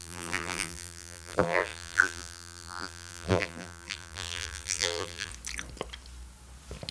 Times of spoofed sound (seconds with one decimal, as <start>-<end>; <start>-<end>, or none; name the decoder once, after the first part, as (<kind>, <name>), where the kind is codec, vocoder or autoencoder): 0.0-5.3 (vocoder, BigVGAN v2)